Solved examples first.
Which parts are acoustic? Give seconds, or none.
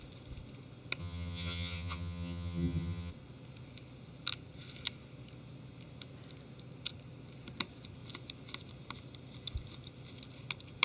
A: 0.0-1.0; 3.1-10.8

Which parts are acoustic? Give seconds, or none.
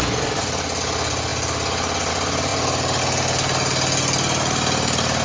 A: 0.0-5.2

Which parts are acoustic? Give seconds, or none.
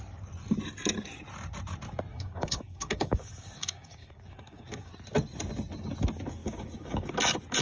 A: 0.0-2.1; 4.9-6.4; 7.1-7.6